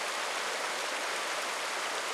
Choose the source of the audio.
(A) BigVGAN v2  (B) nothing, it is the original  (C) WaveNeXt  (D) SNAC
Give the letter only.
B